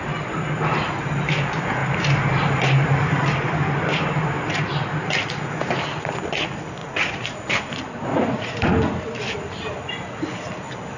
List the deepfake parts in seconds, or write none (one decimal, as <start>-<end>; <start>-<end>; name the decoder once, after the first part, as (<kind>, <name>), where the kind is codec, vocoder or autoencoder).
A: 6.8-7.5 (vocoder, Vocos); 8.1-8.7